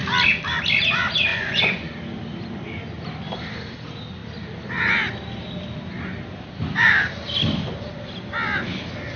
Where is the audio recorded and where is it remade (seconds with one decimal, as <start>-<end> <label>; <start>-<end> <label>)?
0.0-1.3 recorded; 1.3-2.0 remade; 2.0-9.2 recorded

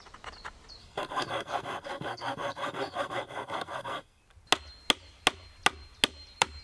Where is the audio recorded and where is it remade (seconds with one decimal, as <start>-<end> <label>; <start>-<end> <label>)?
0.0-0.8 recorded; 0.8-4.2 remade; 4.2-6.6 recorded

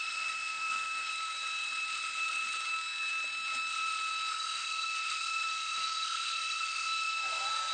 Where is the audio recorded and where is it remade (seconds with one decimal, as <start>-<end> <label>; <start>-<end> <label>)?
0.0-1.1 remade; 1.1-4.3 recorded; 4.3-7.7 remade

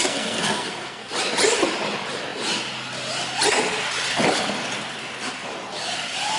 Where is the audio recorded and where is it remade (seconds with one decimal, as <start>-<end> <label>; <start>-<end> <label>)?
0.0-1.1 remade; 1.1-6.4 recorded